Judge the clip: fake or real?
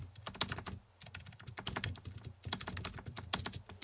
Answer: real